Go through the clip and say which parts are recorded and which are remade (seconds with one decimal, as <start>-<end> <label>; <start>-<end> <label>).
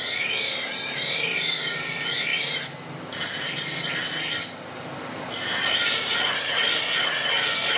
0.0-7.8 recorded